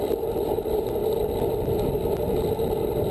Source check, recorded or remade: remade